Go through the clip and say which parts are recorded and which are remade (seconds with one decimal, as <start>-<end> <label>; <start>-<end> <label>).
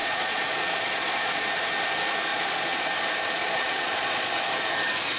0.0-1.5 remade; 1.5-2.3 recorded; 2.3-2.9 remade; 2.9-3.4 recorded; 3.4-4.3 remade; 4.3-5.2 recorded